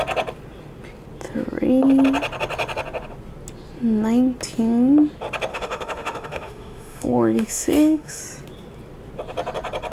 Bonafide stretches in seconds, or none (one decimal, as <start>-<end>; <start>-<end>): 0.0-5.5; 8.2-9.9